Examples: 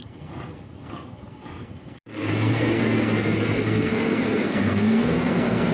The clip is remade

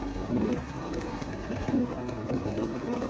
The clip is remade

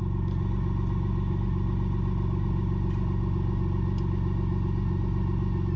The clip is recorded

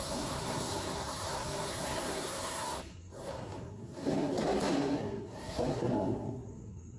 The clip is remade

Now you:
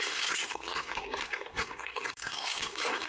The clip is remade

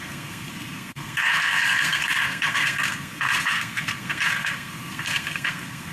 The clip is remade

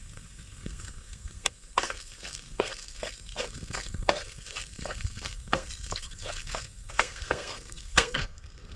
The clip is remade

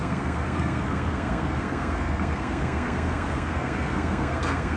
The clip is remade